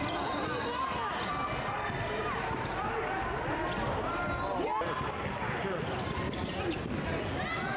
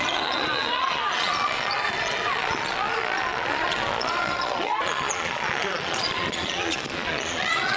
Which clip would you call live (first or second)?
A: first